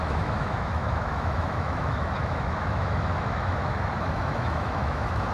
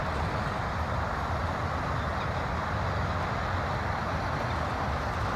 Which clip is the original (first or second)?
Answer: second